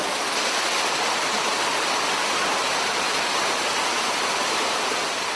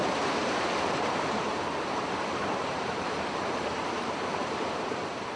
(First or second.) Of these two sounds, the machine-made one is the second